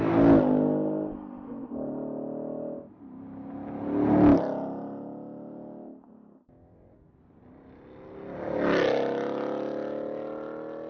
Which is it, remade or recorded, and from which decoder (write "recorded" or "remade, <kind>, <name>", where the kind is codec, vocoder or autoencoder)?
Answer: recorded